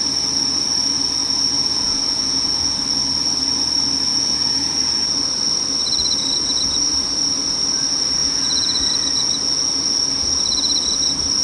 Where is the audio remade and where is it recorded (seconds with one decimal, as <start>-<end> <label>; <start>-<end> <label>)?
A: 0.0-1.2 recorded; 1.2-2.8 remade; 2.8-4.1 recorded; 4.1-5.2 remade; 5.2-8.2 recorded; 8.2-8.8 remade; 8.8-11.4 recorded